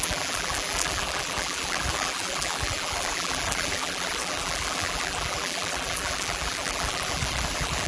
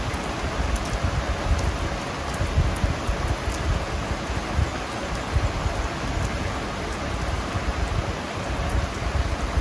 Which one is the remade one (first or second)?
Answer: first